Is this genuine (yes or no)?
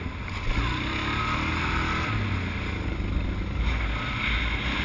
yes